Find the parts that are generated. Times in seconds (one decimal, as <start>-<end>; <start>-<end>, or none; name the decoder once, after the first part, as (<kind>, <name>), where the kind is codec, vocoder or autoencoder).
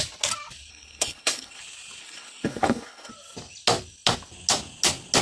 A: 0.7-1.6 (codec, HILCodec); 2.0-3.1